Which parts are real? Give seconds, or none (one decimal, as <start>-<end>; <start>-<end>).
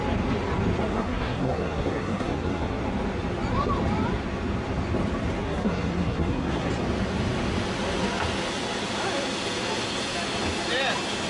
0.0-0.9; 2.8-5.4; 6.7-11.3